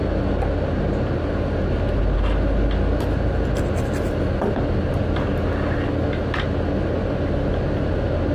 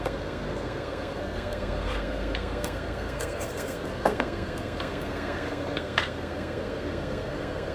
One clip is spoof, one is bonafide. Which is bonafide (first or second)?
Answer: first